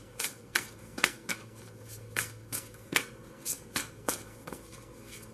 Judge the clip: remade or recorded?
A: remade